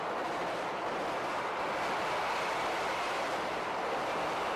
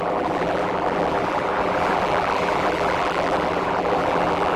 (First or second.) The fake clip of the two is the second